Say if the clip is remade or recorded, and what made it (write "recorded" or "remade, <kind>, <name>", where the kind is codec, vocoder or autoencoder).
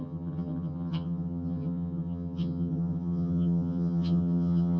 remade, vocoder, HiFi-GAN